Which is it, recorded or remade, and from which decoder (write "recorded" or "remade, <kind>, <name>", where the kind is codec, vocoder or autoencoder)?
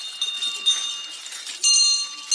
recorded